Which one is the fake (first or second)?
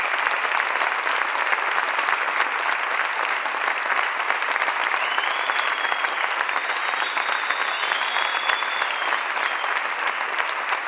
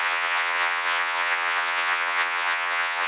second